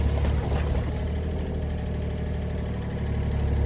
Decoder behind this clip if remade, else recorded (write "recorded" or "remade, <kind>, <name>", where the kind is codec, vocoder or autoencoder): recorded